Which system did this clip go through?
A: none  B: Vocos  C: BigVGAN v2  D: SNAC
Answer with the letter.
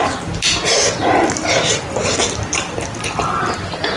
A